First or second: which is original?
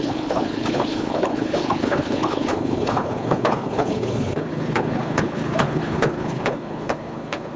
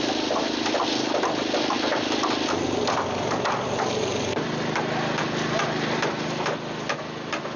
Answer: second